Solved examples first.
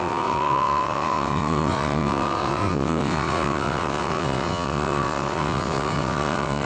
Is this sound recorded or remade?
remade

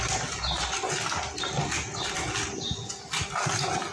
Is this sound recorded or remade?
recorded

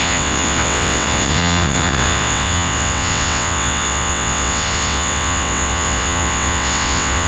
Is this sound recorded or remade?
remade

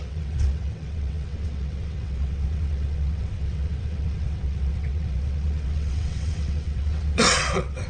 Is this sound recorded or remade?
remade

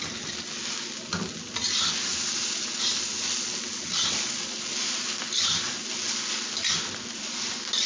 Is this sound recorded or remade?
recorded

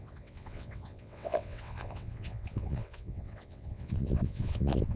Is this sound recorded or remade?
remade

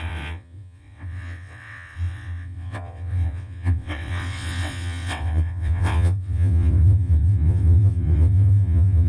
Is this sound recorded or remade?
remade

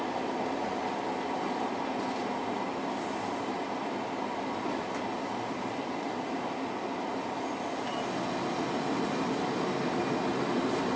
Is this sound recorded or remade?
recorded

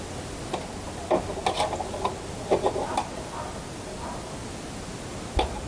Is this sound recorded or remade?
recorded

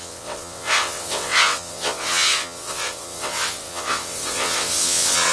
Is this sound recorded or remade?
remade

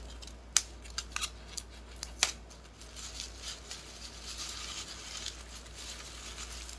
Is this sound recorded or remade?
recorded